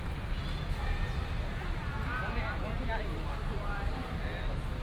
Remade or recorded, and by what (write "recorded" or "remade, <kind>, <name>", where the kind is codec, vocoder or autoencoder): recorded